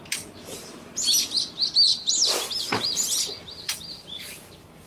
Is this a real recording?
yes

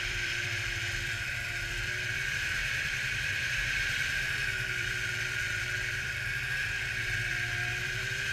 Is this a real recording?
no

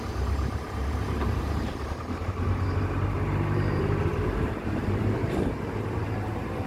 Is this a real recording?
no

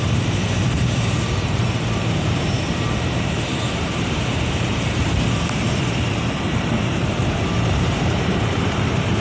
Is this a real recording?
no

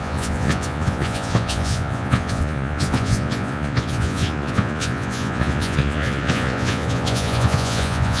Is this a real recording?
no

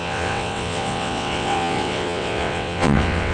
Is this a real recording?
no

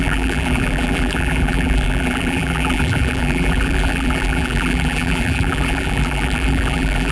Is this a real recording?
no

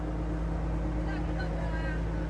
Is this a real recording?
yes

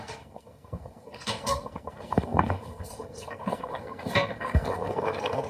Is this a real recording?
no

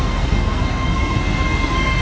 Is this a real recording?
no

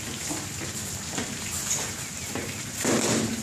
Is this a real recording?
yes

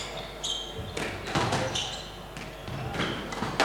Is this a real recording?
yes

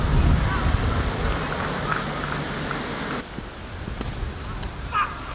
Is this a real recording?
yes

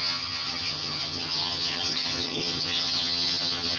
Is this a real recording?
no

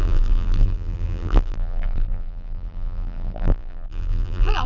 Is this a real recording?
no